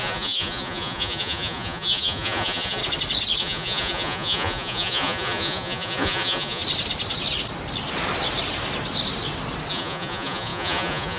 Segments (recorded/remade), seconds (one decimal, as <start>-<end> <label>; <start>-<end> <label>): 0.0-2.8 remade; 2.8-3.4 recorded; 3.4-6.6 remade; 6.6-9.7 recorded; 9.7-11.2 remade

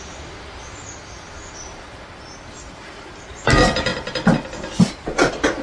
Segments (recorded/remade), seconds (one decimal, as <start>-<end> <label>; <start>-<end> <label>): 0.0-5.6 recorded

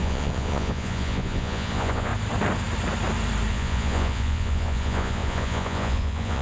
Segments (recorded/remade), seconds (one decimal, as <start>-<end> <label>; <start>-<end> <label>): 0.0-2.1 remade; 2.1-3.5 recorded; 3.5-6.4 remade

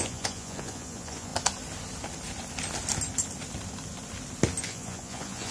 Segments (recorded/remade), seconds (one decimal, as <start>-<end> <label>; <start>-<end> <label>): 0.0-1.3 remade; 1.3-4.6 recorded; 4.6-5.5 remade

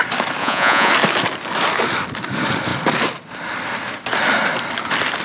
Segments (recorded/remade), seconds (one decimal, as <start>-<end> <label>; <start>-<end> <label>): 0.0-0.4 recorded; 0.4-0.9 remade; 0.9-5.2 recorded

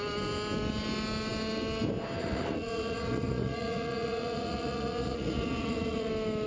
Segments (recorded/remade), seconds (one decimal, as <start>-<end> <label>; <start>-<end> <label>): 0.0-2.2 recorded; 2.2-6.1 remade; 6.1-6.5 recorded